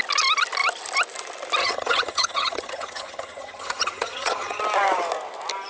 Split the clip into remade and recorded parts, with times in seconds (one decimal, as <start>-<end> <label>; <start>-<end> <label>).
0.0-1.6 recorded; 1.6-4.6 remade; 4.6-5.7 recorded